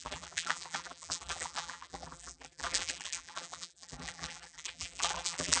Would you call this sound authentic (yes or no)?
no